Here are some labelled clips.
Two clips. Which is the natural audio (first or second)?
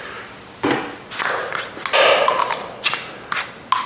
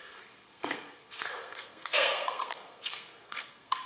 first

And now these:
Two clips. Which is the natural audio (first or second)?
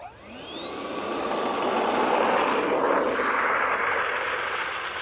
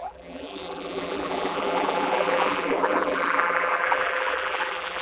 first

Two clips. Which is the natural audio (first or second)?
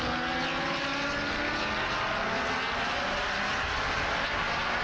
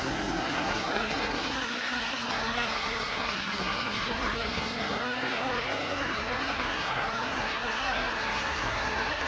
first